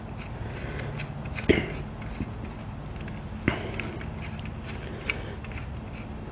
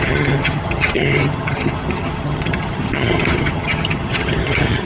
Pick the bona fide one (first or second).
first